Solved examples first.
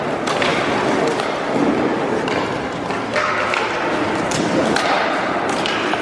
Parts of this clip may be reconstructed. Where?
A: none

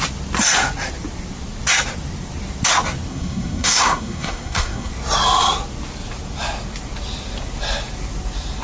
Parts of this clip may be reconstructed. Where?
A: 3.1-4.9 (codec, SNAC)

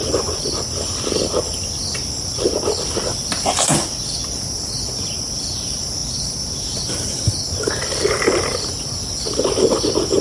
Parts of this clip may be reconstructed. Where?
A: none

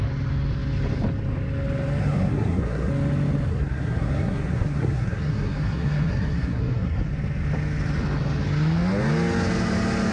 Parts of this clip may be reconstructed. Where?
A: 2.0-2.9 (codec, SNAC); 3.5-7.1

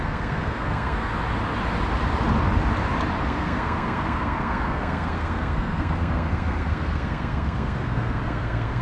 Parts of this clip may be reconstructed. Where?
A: 0.0-1.1 (codec, SNAC); 3.2-8.8

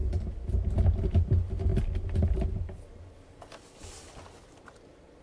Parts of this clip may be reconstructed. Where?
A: none

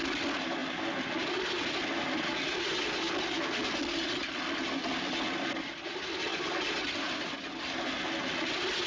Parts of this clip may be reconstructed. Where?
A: none